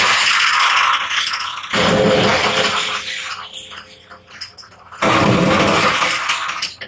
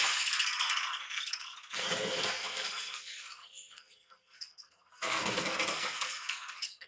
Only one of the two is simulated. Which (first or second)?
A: second